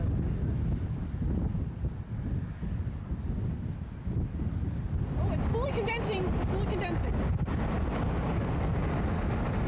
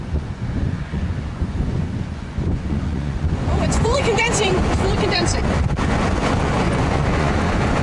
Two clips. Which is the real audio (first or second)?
first